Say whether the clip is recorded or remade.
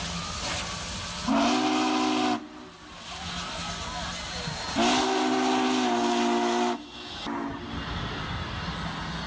recorded